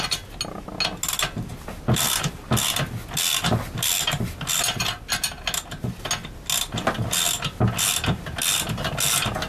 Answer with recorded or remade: recorded